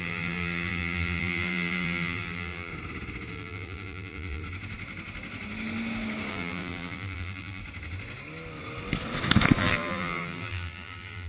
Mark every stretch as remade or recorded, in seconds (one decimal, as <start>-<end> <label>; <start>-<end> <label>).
0.0-2.7 remade; 2.7-3.3 recorded; 3.3-4.4 remade; 4.4-6.3 recorded; 6.3-7.6 remade; 7.6-9.6 recorded; 9.6-11.3 remade